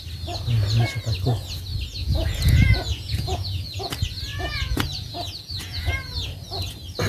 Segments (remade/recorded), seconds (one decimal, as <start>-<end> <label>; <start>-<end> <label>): 0.0-2.0 recorded; 2.0-3.9 remade; 3.9-4.3 recorded; 4.3-5.9 remade; 5.9-7.1 recorded